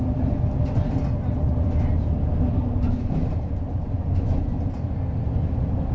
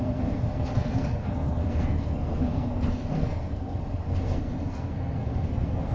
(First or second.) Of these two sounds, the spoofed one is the second